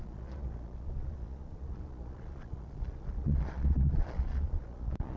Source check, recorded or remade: remade